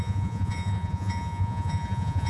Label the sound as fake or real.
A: fake